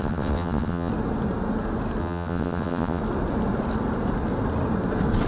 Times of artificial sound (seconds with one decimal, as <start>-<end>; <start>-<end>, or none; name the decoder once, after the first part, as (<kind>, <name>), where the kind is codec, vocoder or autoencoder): 0.0-0.9 (vocoder, WaveNeXt); 2.0-3.0